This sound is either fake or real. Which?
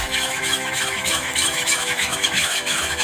fake